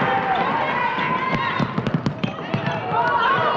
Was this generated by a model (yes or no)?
no